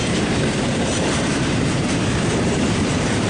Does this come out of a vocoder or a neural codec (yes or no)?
yes